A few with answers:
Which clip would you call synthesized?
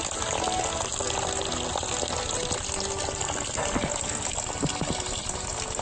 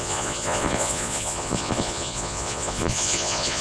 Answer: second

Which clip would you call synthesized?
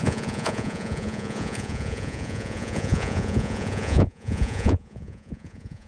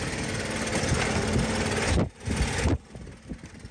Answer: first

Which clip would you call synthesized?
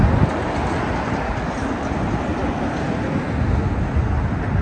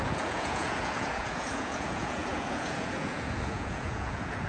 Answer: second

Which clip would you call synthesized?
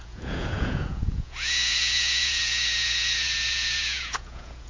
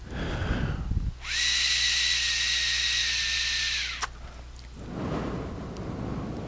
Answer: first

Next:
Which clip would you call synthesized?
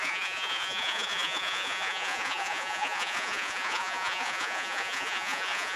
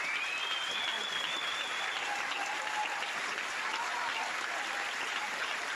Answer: first